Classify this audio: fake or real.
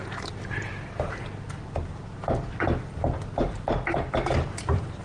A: fake